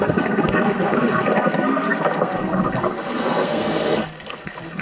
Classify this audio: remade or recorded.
remade